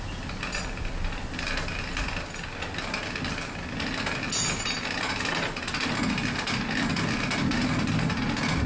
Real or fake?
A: real